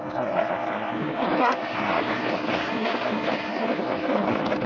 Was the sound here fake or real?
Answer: fake